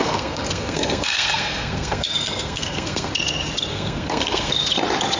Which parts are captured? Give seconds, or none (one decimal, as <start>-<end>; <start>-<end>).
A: 3.1-3.7; 4.5-5.2